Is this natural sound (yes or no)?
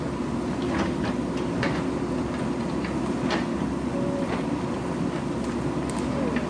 yes